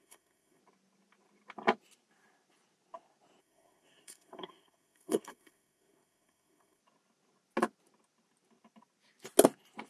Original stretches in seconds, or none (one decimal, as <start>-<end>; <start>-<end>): 0.6-3.4; 6.8-9.9